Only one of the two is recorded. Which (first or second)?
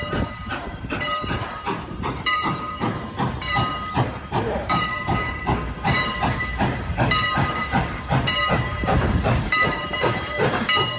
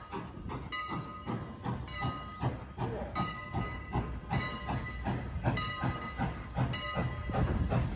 second